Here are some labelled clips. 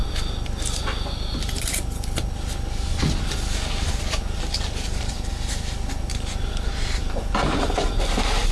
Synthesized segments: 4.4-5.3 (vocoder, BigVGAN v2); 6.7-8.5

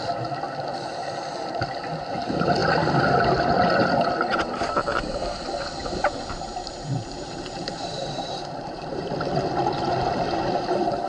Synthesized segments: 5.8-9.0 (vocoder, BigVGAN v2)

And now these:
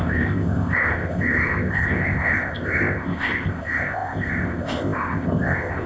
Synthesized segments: 0.0-5.9 (codec, ZipCodec)

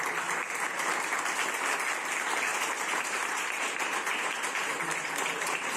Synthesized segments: 2.5-5.8 (vocoder, BigVGAN v2)

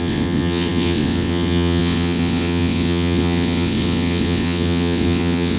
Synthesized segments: 0.0-5.6 (vocoder, WaveNeXt)